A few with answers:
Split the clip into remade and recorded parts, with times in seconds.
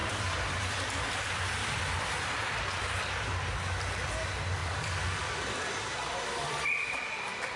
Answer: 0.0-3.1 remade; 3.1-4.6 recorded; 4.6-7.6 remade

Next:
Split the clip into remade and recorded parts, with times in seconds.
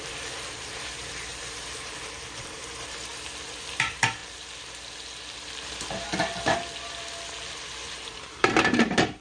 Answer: 0.0-3.1 remade; 3.1-3.7 recorded; 3.7-4.2 remade; 4.2-7.6 recorded; 7.6-9.2 remade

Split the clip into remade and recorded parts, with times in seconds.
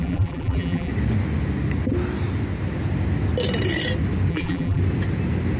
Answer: 0.0-0.9 remade; 0.9-4.3 recorded; 4.3-4.8 remade; 4.8-5.6 recorded